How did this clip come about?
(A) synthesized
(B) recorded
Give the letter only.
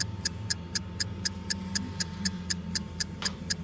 A